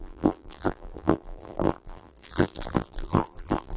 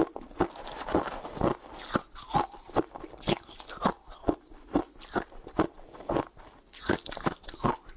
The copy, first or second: first